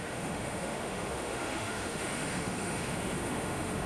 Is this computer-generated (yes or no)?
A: yes